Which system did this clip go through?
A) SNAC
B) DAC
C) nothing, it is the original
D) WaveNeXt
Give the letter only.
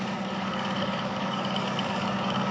B